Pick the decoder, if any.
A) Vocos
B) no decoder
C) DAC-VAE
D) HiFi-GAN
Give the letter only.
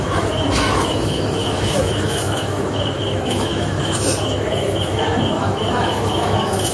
C